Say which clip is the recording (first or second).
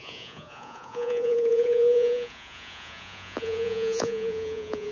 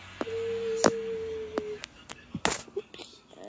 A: second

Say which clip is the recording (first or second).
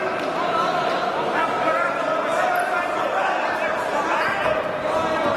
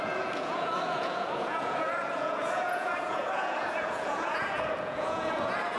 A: first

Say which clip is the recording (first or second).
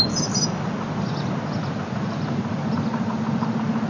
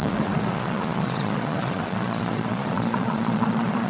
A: first